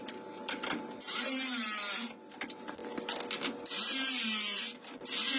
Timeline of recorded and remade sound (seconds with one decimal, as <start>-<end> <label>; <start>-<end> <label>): 0.0-5.4 recorded